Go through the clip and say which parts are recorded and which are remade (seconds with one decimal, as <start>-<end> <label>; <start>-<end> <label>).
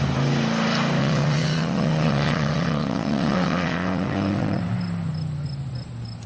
0.0-1.0 recorded; 1.0-4.6 remade; 4.6-6.3 recorded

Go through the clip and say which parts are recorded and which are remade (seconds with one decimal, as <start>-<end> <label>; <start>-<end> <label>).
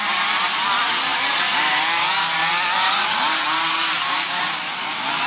0.0-5.3 remade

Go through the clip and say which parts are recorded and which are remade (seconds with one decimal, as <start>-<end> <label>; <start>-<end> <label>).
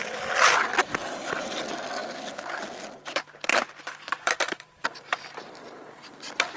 0.0-1.0 recorded; 1.0-1.6 remade; 1.6-3.5 recorded; 3.5-5.6 remade; 5.6-6.6 recorded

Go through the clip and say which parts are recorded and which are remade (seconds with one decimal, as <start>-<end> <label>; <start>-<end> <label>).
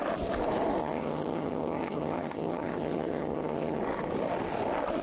0.0-0.8 recorded; 0.8-3.8 remade; 3.8-5.0 recorded